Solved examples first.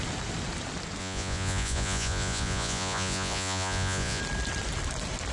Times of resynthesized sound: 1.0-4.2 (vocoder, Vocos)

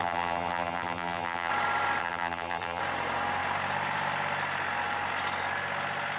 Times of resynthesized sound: 0.0-1.5 (vocoder, BigVGAN v2); 2.0-2.8

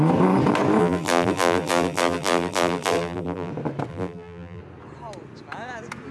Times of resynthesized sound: 0.8-3.5 (vocoder, BigVGAN v2); 3.9-4.6

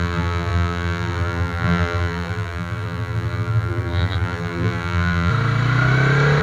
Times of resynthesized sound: 0.0-5.3 (vocoder, BigVGAN v2)

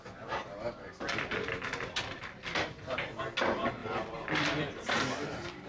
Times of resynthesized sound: 3.8-4.9 (vocoder, BigVGAN v2)

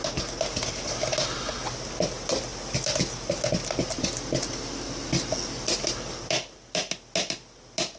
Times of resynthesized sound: none

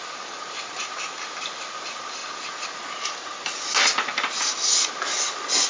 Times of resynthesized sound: none